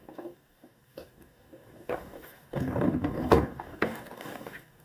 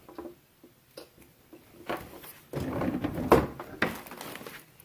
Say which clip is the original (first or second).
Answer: second